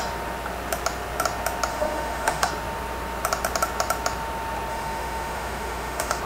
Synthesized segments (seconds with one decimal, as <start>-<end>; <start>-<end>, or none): 1.7-2.5; 4.7-6.2